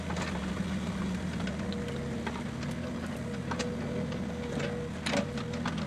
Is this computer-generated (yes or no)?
no